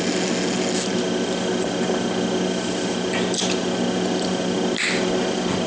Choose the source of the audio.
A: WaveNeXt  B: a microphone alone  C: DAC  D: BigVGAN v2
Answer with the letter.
B